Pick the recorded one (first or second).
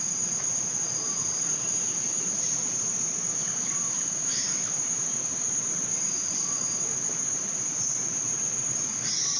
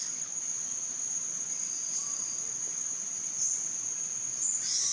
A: second